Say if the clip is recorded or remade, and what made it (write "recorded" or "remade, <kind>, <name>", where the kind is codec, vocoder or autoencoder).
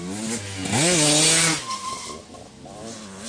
recorded